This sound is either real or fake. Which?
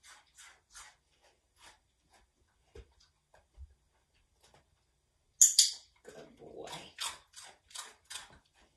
real